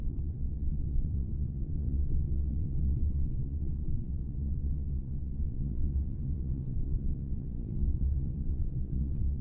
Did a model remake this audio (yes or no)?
yes